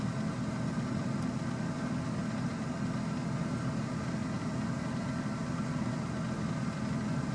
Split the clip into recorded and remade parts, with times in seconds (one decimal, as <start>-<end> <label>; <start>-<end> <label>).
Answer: 0.0-4.2 recorded; 4.2-5.1 remade; 5.1-7.3 recorded